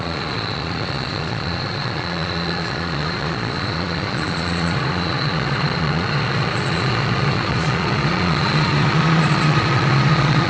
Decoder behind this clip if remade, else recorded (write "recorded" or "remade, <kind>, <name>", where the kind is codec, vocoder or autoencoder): remade, vocoder, Vocos